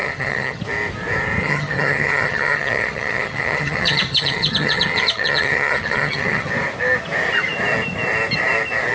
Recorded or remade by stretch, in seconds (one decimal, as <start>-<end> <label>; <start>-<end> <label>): 0.0-0.6 remade; 0.6-1.4 recorded; 1.4-6.5 remade; 6.5-8.9 recorded